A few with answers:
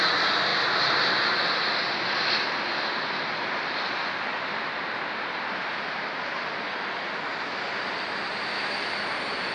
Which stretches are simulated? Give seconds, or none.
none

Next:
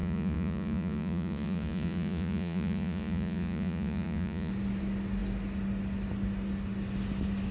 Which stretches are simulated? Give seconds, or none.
0.0-4.5 (vocoder, Vocos)

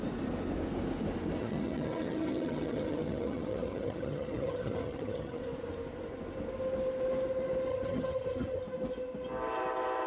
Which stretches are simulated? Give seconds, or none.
1.4-5.4 (vocoder, HiFi-GAN); 7.7-8.6

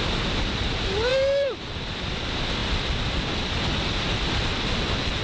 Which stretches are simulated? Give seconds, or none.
1.1-2.1 (vocoder, BigVGAN v2); 2.6-3.5

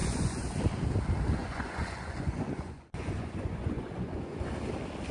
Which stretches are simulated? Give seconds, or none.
0.0-0.6 (vocoder, Vocos); 1.4-4.5

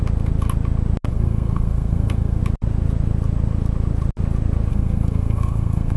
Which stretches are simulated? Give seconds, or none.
1.1-2.4 (codec, SNAC); 4.7-6.0

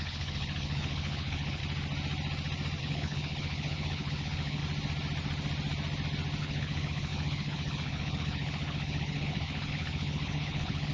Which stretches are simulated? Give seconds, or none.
0.0-1.6 (codec, HILCodec); 2.8-4.6; 6.4-10.9

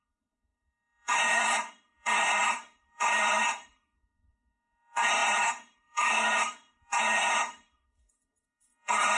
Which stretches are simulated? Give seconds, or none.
0.0-9.2 (codec, SNAC)